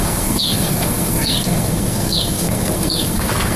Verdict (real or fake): fake